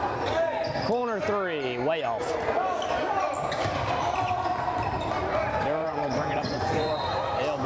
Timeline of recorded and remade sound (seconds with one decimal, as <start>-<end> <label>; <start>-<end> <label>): 0.0-5.8 recorded; 5.8-6.9 remade; 6.9-7.7 recorded